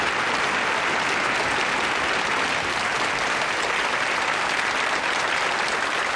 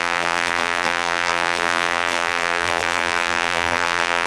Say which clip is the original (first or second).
first